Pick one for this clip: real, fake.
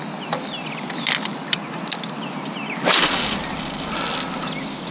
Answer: real